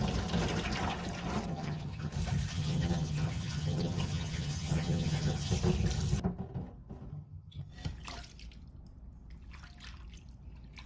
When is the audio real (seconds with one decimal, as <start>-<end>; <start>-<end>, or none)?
0.0-1.5; 2.1-2.5; 5.5-7.1; 7.7-10.9